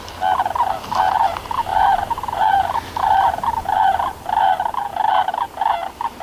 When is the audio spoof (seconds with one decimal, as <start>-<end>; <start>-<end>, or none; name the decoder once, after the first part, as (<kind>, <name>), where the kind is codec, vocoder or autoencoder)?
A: none

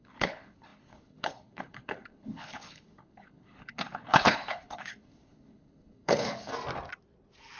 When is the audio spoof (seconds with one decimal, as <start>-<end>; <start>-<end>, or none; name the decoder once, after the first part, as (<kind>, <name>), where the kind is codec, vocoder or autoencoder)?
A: 0.0-6.5 (codec, HILCodec)

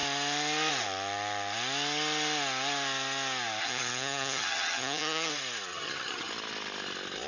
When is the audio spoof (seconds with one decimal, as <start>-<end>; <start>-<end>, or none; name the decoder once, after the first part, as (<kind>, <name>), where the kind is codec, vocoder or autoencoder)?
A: 3.6-5.3 (vocoder, HiFi-GAN); 5.7-6.3

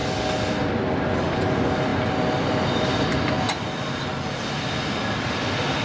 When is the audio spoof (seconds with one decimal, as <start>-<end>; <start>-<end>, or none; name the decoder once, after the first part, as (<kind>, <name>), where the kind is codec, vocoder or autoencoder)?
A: none